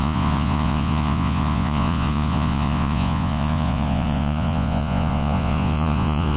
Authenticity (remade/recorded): remade